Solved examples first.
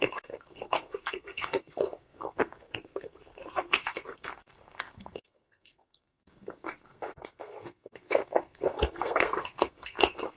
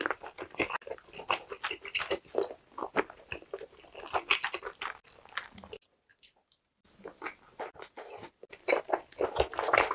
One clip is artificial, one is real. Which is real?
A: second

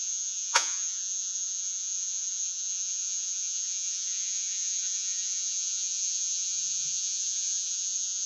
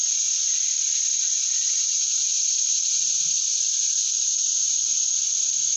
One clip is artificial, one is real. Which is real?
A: second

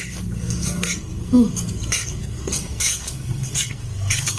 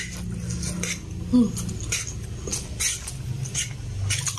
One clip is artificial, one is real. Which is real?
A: second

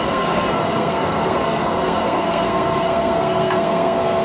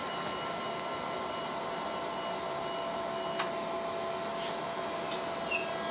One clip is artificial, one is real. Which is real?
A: second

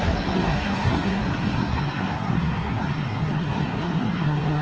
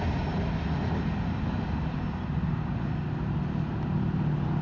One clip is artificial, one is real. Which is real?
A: second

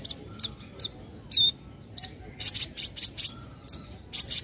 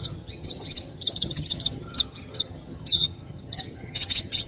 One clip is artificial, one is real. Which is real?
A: first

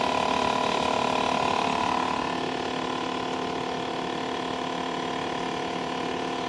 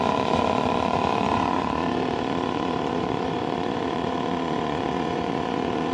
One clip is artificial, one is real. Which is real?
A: first